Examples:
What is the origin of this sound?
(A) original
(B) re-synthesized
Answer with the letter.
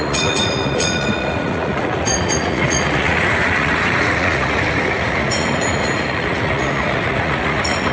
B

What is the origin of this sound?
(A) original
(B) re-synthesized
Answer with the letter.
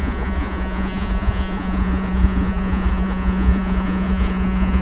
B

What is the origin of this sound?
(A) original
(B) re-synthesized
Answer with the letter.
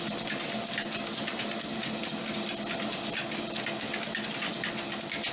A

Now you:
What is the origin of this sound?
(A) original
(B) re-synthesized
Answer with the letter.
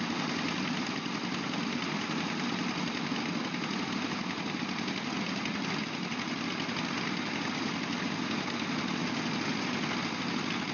A